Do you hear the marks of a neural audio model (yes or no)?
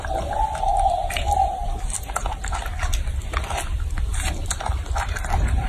yes